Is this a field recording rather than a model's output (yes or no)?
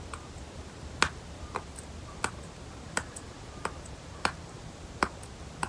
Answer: yes